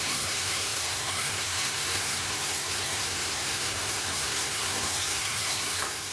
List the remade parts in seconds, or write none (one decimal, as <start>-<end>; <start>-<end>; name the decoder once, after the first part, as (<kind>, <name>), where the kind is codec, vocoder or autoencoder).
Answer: 0.0-6.1 (codec, SNAC)

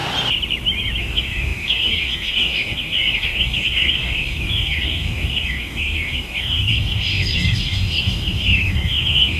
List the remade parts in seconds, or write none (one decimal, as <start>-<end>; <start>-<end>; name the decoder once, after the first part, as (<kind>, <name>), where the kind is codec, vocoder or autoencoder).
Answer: 1.0-9.4 (codec, DAC)

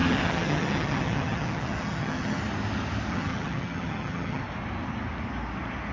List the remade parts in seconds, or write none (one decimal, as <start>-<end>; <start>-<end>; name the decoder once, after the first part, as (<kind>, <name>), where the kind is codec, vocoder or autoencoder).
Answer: 0.0-2.4 (vocoder, HiFi-GAN); 3.1-4.4

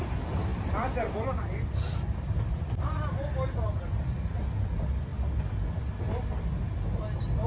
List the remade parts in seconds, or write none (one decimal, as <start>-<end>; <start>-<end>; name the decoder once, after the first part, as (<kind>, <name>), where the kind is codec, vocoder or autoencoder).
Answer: 0.5-2.8 (vocoder, BigVGAN v2)

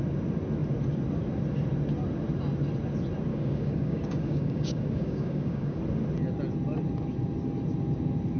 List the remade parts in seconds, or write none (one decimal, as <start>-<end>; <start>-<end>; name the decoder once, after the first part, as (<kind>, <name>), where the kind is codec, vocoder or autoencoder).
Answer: 3.3-5.8 (codec, DAC)

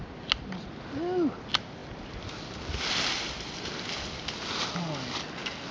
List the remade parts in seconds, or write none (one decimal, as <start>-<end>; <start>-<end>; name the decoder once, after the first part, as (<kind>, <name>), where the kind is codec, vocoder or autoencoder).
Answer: none